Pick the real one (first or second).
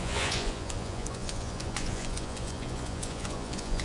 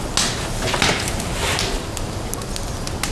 second